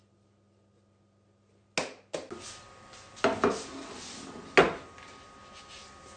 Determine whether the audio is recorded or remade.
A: recorded